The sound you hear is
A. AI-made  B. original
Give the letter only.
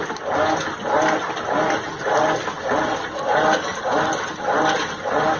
B